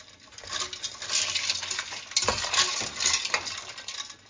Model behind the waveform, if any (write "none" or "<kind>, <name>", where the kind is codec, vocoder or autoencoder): none